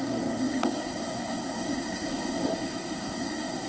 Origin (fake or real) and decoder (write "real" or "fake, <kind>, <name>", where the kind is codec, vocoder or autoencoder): fake, codec, SNAC